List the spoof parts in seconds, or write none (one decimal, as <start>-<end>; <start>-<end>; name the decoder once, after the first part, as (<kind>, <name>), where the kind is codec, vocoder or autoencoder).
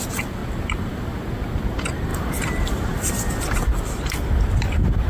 none